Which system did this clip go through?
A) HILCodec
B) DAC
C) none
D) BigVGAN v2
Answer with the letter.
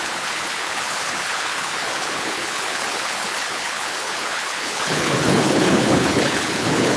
A